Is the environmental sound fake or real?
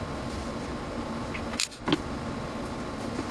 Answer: real